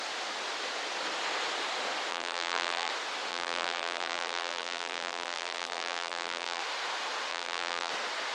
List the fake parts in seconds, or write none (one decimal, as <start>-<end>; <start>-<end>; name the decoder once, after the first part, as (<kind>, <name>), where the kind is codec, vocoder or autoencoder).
2.1-2.9 (vocoder, BigVGAN v2); 3.3-6.6; 7.3-7.9